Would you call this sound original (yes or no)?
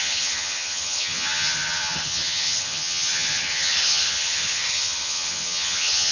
no